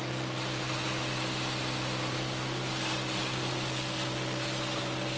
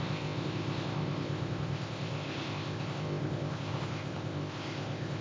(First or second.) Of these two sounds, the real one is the first